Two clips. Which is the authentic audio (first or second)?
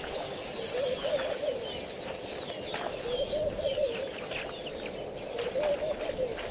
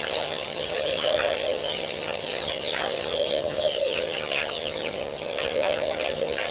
first